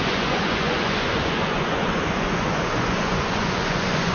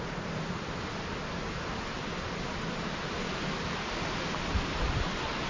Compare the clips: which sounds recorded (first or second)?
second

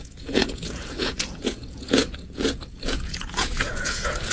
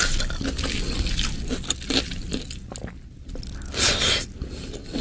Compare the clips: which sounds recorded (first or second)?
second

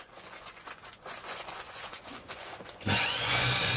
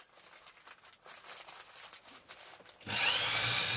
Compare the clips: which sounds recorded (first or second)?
second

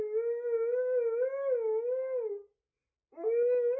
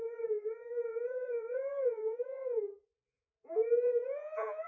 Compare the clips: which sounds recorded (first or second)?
first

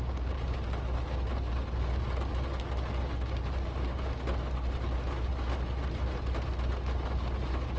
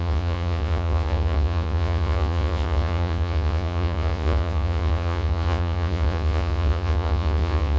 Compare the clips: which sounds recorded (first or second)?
first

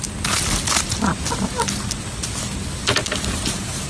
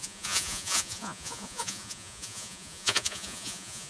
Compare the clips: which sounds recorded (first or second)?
first